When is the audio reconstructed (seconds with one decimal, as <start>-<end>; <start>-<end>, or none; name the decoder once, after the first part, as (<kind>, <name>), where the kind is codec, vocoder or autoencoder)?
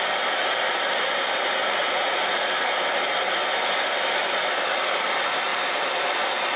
0.0-1.8 (vocoder, BigVGAN v2); 4.2-5.5; 6.1-6.6